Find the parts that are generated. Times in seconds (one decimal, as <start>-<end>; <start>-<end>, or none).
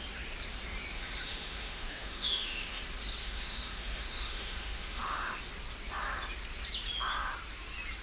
0.9-2.8; 3.2-5.4